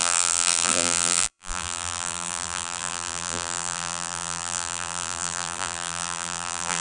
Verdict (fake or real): fake